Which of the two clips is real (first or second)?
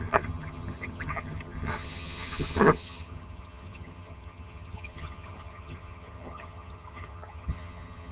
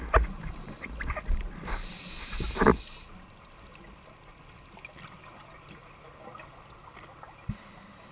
second